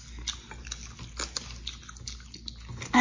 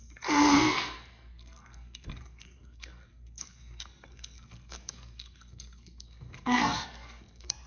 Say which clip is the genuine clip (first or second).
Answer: first